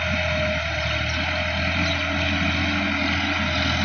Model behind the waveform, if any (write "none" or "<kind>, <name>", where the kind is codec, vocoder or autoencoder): none